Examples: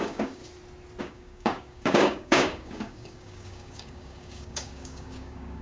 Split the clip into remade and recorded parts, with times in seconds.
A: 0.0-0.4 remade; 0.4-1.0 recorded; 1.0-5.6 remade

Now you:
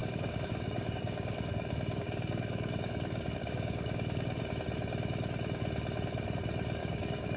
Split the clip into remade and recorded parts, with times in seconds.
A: 0.0-4.4 remade; 4.4-6.8 recorded; 6.8-7.4 remade

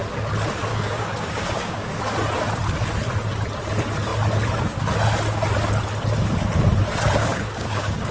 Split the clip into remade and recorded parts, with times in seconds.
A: 0.0-0.7 recorded; 0.7-2.0 remade; 2.0-7.2 recorded; 7.2-8.1 remade

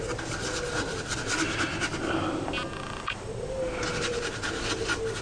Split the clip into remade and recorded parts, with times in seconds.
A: 0.0-5.2 recorded

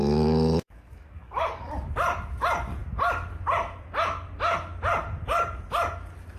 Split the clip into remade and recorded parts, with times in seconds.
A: 0.0-1.7 remade; 1.7-6.4 recorded

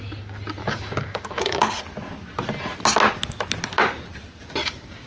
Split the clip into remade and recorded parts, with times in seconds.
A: 0.0-0.6 recorded; 0.6-1.6 remade; 1.6-4.6 recorded; 4.6-5.1 remade

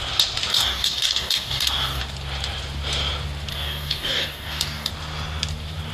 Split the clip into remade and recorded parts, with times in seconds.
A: 0.0-0.5 recorded; 0.5-2.0 remade; 2.0-3.5 recorded; 3.5-4.9 remade; 4.9-5.9 recorded

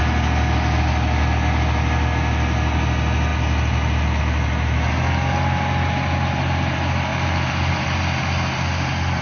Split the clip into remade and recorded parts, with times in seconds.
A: 0.0-9.2 recorded